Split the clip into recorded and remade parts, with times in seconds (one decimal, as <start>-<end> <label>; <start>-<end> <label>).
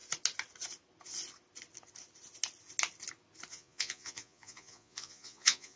0.0-3.5 recorded; 3.5-5.8 remade